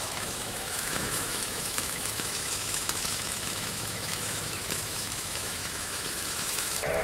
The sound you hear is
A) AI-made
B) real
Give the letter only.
A